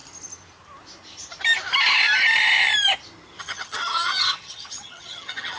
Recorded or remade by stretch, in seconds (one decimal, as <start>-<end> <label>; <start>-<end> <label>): 0.0-3.4 recorded; 3.4-5.6 remade